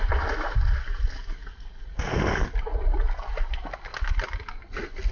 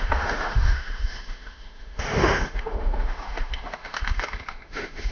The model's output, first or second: second